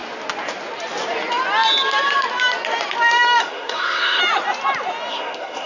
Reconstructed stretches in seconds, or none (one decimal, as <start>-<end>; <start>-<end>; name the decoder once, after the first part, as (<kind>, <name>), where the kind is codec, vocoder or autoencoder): 3.4-4.2 (codec, SNAC); 5.1-5.7